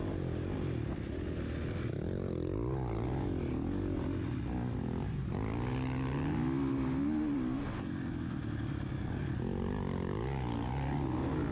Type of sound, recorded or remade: recorded